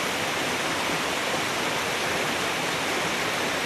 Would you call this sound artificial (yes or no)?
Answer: yes